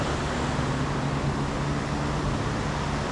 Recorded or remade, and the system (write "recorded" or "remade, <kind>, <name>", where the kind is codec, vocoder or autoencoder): recorded